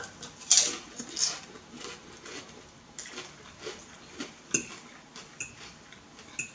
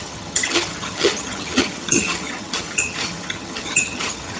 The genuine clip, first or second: first